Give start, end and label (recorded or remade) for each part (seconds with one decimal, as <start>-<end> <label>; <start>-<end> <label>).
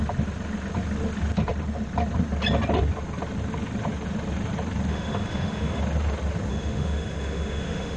0.0-4.9 recorded; 4.9-5.8 remade; 5.8-6.5 recorded; 6.5-8.0 remade